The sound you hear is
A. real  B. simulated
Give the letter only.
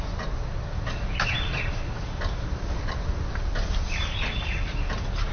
A